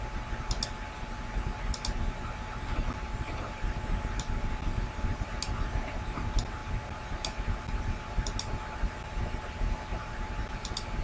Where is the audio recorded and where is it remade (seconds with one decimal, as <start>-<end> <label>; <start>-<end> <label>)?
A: 0.0-11.0 recorded